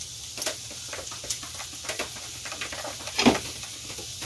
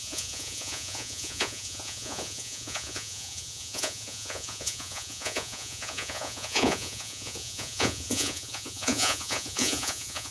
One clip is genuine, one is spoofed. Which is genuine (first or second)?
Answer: first